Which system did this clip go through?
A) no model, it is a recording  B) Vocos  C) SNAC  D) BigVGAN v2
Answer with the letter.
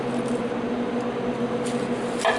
A